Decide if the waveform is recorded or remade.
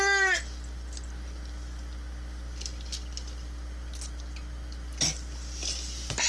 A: recorded